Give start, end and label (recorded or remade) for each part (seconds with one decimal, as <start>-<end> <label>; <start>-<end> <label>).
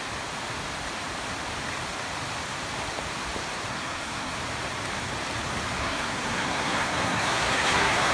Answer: 0.0-3.7 recorded; 3.7-4.4 remade; 4.4-5.8 recorded; 5.8-8.1 remade